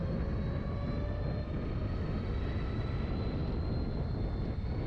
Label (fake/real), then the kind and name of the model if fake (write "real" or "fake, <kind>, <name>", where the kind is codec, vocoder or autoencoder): real